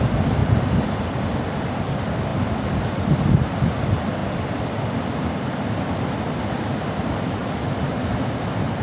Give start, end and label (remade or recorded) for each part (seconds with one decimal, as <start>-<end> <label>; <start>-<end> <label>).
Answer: 0.0-7.4 recorded; 7.4-8.0 remade; 8.0-8.8 recorded